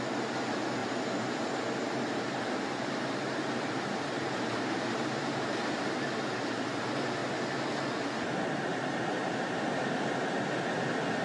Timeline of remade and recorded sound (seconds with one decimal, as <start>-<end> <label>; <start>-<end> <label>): 0.0-0.8 recorded; 0.8-5.9 remade; 5.9-8.7 recorded; 8.7-10.0 remade; 10.0-11.2 recorded